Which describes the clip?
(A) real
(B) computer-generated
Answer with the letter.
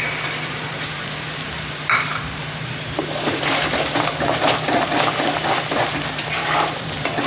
B